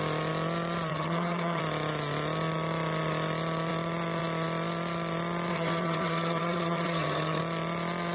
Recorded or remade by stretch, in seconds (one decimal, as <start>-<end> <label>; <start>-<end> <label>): 0.0-0.9 recorded; 0.9-1.6 remade; 1.6-5.5 recorded; 5.5-7.4 remade; 7.4-8.1 recorded

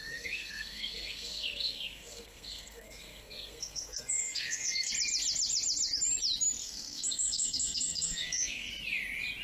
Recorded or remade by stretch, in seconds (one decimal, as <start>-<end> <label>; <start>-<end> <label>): 0.0-4.9 remade; 4.9-6.6 recorded; 6.6-8.7 remade; 8.7-9.4 recorded

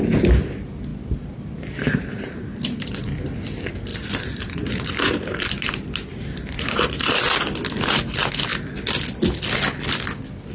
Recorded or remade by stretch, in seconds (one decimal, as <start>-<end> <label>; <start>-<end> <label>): 0.0-0.9 recorded; 0.9-2.9 remade; 2.9-3.9 recorded; 3.9-5.4 remade; 5.4-6.1 recorded; 6.1-7.2 remade; 7.2-10.5 recorded

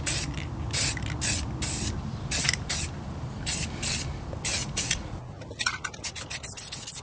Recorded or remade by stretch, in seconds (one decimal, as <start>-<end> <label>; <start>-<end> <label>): 0.0-4.5 recorded; 4.5-5.9 remade; 5.9-7.0 recorded

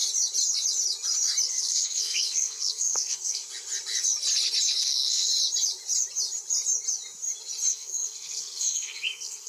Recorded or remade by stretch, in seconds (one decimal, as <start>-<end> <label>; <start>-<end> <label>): 0.0-1.5 recorded; 1.5-3.4 remade; 3.4-4.8 recorded; 4.8-5.3 remade; 5.3-7.7 recorded; 7.7-9.5 remade

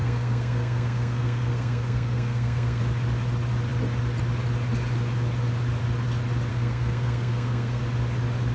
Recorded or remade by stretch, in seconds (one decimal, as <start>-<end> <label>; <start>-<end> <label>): 0.0-2.8 remade; 2.8-6.5 recorded; 6.5-7.8 remade; 7.8-8.5 recorded